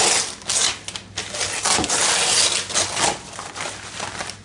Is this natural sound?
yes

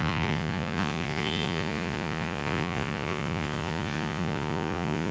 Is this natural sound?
no